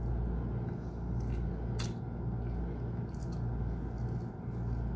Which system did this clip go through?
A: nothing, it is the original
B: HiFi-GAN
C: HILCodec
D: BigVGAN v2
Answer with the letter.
A